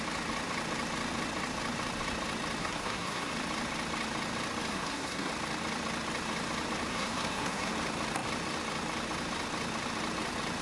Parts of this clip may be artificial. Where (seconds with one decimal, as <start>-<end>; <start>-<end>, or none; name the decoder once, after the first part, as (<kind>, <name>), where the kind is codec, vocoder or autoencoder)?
2.6-3.3 (codec, SNAC); 4.7-5.3; 6.9-7.7